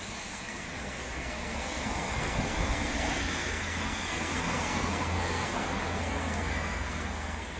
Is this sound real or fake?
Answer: fake